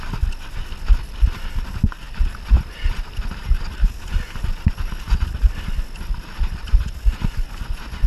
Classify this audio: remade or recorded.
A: recorded